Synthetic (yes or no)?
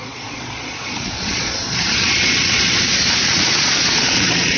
yes